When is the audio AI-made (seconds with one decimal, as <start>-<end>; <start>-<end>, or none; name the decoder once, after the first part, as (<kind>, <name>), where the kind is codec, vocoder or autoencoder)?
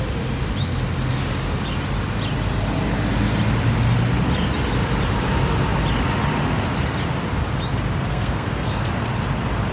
8.1-8.8 (codec, SNAC)